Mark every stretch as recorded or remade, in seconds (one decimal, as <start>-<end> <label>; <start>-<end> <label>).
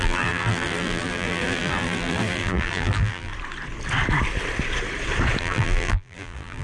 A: 0.0-3.3 remade; 3.3-5.4 recorded; 5.4-6.6 remade